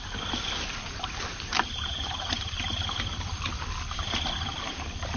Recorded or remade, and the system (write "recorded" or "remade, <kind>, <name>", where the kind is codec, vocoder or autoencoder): recorded